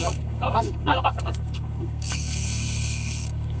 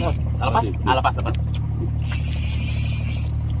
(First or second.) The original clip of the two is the second